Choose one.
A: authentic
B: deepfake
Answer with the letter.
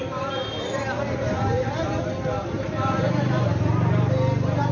A